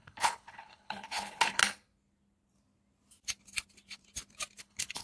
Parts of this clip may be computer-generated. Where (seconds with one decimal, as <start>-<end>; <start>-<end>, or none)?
0.0-1.6; 4.6-5.0